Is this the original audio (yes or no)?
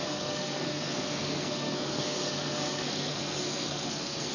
no